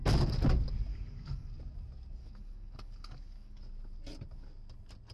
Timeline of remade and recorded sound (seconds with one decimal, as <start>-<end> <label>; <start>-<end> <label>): 0.0-0.9 recorded; 0.9-1.5 remade; 1.5-2.2 recorded; 2.2-3.6 remade; 3.6-5.1 recorded